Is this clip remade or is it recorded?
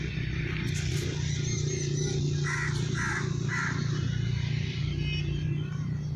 recorded